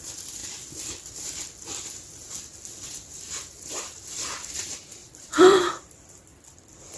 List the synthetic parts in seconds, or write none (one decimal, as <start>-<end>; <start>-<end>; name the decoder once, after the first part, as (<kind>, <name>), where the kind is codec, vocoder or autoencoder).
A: 5.0-5.7 (vocoder, BigVGAN v2)